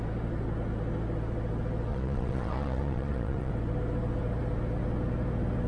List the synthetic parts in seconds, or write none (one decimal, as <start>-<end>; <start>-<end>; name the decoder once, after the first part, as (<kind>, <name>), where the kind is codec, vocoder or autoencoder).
1.9-3.5 (vocoder, Vocos)

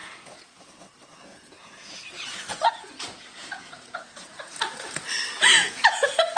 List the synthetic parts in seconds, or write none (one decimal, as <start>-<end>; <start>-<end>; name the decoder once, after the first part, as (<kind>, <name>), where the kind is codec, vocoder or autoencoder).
0.0-0.6 (vocoder, Vocos); 1.3-5.1; 5.5-6.4